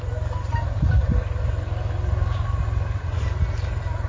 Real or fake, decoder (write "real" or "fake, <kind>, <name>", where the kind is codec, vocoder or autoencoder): real